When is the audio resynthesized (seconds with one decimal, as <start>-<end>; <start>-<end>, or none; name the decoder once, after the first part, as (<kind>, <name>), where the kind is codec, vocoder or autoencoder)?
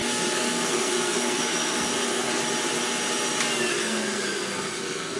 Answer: 0.0-2.4 (codec, SNAC); 3.7-5.2